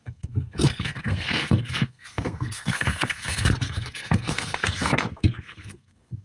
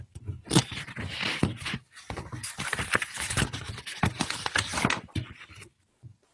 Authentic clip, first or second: second